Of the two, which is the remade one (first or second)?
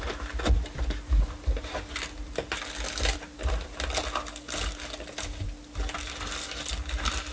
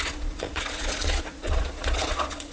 second